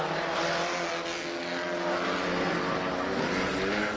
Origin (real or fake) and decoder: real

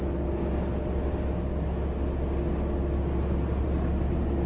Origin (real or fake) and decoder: real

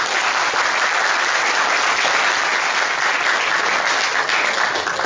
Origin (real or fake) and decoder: real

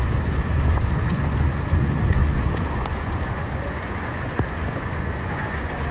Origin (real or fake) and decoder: fake, vocoder, Vocos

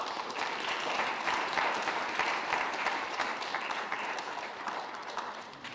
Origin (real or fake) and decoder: fake, vocoder, BigVGAN v2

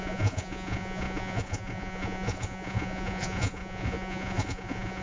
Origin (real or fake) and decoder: fake, vocoder, Vocos